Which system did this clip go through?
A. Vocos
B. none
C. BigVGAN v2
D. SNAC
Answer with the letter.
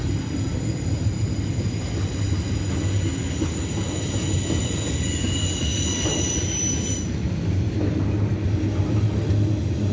B